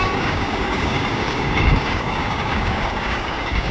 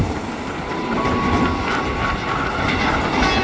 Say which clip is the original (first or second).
second